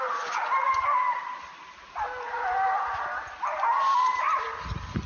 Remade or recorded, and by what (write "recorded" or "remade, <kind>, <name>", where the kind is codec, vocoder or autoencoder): recorded